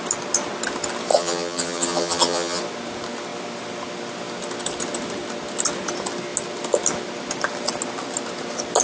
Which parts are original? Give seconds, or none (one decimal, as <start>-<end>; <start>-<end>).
0.0-1.1; 2.6-8.8

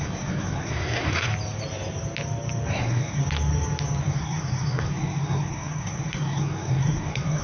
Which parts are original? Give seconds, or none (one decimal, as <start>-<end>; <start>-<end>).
1.3-2.7; 3.2-4.0

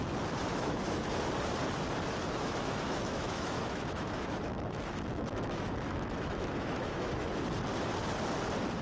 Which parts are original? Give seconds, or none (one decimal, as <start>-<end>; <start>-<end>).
0.0-0.5; 1.1-2.2; 7.3-8.8